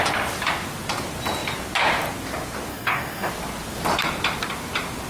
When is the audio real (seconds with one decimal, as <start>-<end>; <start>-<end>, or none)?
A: 0.0-2.7; 3.3-5.1